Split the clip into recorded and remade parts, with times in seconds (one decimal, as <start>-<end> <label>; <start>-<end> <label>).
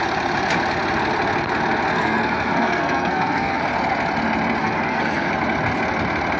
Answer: 0.0-1.9 recorded; 1.9-3.6 remade; 3.6-4.6 recorded; 4.6-5.3 remade; 5.3-6.4 recorded